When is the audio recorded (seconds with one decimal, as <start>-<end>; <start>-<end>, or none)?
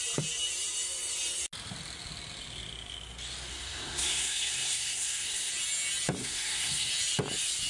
0.0-3.5; 5.5-6.2; 6.9-7.7